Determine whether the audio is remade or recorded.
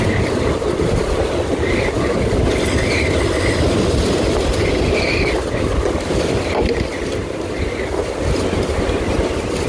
recorded